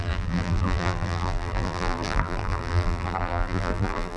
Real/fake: fake